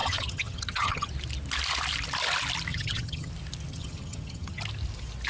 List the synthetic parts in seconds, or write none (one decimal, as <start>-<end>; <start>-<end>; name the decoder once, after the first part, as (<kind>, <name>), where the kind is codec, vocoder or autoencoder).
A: 0.0-1.1 (vocoder, HiFi-GAN); 2.7-3.3; 3.7-4.6